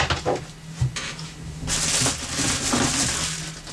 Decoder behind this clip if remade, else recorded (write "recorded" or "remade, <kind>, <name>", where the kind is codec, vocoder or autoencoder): recorded